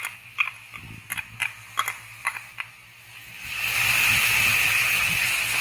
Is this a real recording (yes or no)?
yes